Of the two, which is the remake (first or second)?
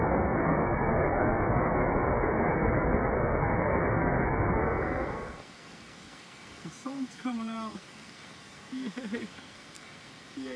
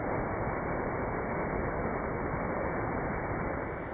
first